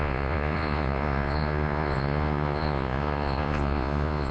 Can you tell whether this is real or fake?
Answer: fake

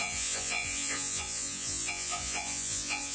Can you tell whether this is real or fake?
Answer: fake